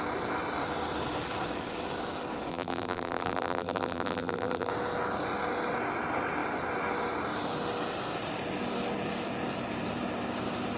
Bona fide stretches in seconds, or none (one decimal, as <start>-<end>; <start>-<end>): 0.0-2.5; 4.7-10.8